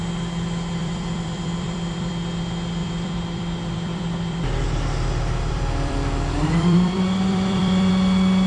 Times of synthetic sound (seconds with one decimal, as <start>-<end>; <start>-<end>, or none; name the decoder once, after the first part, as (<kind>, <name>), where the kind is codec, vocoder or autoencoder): 0.8-2.1 (vocoder, BigVGAN v2); 2.8-7.9